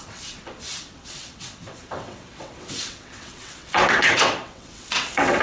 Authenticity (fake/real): fake